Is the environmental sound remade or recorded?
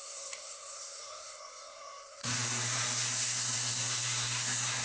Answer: remade